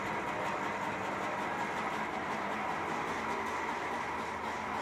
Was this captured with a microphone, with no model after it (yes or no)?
yes